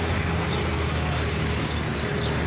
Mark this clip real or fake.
real